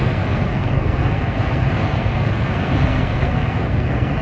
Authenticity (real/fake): fake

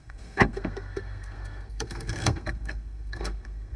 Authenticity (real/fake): fake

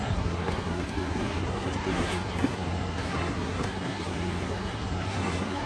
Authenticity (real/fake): fake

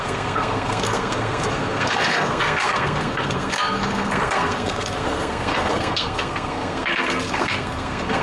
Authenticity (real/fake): fake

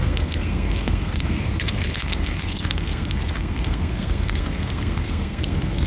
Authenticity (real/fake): fake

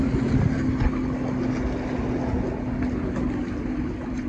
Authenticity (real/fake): real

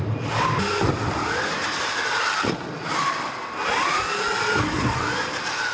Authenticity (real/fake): real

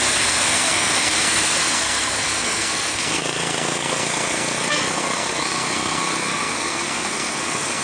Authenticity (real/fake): fake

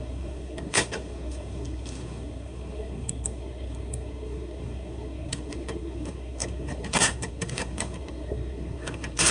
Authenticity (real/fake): fake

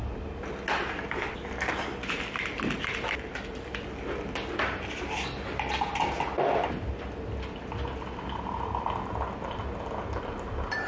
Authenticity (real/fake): real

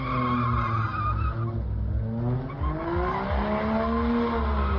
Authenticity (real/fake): real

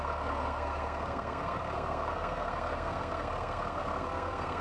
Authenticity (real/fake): fake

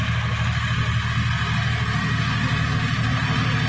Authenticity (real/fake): real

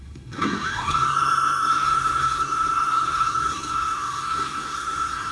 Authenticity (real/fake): fake